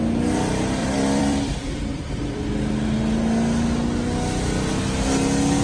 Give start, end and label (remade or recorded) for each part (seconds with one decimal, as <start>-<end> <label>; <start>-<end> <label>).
0.0-0.8 recorded; 0.8-2.5 remade; 2.5-5.6 recorded